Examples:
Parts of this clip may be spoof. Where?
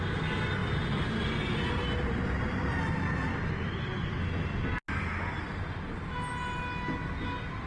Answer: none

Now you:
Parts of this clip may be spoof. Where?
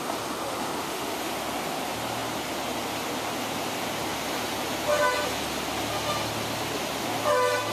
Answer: 0.8-1.3 (autoencoder, DAC-VAE)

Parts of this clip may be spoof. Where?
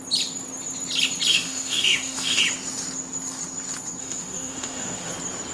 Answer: 1.3-2.4 (autoencoder, DAC-VAE); 4.0-5.1